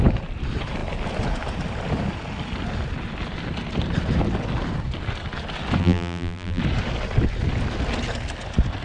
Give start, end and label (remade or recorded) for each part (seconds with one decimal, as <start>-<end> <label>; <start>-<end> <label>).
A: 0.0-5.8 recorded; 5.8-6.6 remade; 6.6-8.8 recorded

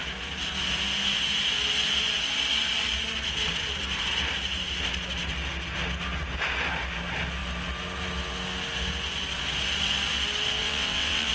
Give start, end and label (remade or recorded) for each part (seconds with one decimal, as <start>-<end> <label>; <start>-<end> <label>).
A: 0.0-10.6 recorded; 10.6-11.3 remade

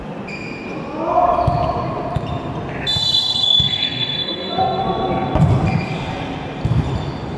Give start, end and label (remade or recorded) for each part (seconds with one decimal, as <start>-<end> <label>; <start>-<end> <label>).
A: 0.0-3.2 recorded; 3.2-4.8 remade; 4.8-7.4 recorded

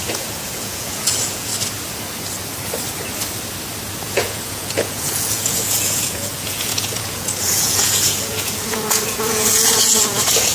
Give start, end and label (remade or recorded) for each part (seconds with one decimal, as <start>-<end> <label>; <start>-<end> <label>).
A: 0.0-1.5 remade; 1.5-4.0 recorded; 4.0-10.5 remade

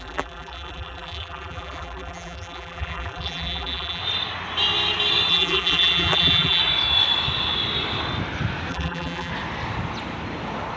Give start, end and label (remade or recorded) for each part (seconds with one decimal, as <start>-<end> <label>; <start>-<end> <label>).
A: 0.0-4.0 remade; 4.0-5.3 recorded; 5.3-6.6 remade; 6.6-8.7 recorded; 8.7-9.3 remade; 9.3-10.8 recorded